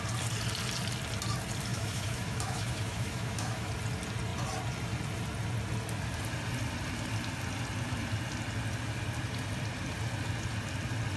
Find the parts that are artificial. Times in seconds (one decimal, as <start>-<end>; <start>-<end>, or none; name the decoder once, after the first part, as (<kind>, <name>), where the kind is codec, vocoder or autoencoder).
1.7-3.7 (autoencoder, DAC-VAE)